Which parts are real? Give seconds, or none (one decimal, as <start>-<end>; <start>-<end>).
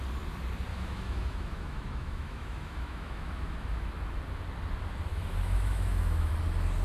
0.0-0.7; 3.9-5.1; 6.3-6.8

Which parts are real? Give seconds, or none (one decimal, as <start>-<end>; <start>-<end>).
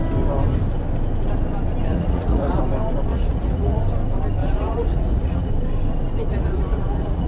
0.0-1.9; 2.6-3.1; 3.8-4.4; 5.5-6.3